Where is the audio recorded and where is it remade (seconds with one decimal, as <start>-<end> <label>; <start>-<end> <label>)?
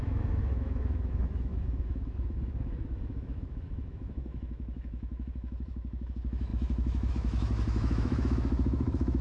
0.0-9.2 remade